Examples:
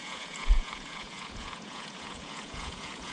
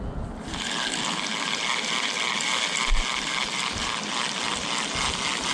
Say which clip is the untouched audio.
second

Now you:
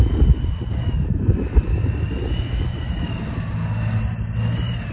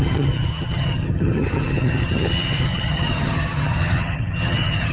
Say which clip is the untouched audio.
first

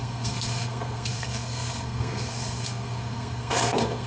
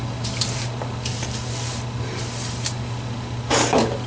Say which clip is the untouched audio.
second